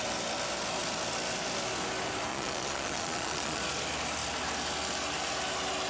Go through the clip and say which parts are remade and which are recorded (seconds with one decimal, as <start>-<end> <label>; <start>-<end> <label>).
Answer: 0.0-2.3 recorded; 2.3-3.6 remade; 3.6-5.9 recorded